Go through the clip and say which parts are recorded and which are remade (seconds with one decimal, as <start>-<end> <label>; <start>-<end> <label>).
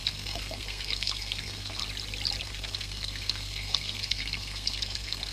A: 0.0-1.8 remade; 1.8-2.4 recorded; 2.4-5.3 remade